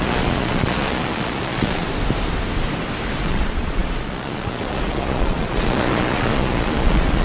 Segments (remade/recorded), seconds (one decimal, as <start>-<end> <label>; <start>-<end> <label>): 0.0-1.9 remade; 1.9-3.2 recorded; 3.2-7.2 remade